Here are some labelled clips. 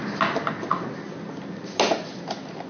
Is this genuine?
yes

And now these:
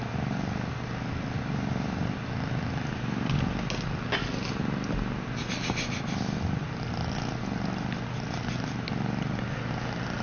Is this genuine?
yes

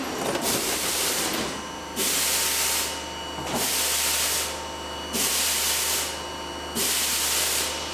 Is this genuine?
yes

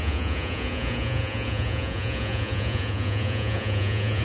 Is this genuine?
no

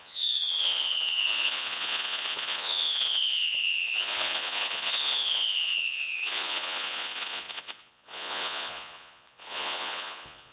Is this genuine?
no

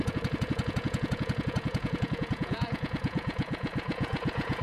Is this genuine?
no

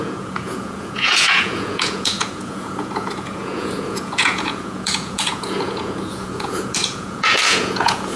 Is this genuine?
no